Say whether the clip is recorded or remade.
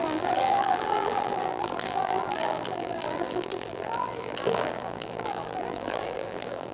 remade